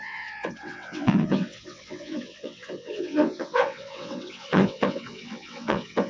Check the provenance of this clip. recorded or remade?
remade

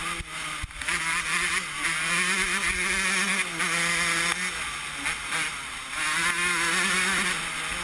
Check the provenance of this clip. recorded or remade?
recorded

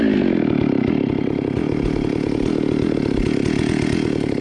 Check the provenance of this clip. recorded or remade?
recorded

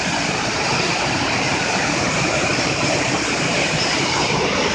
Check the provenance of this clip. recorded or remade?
remade